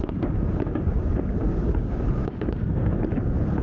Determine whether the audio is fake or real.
fake